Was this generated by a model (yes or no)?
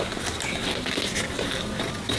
no